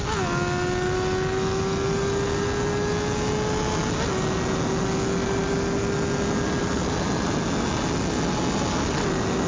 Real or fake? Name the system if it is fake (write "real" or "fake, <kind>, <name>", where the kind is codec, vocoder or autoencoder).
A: real